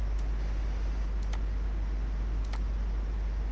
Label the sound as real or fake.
real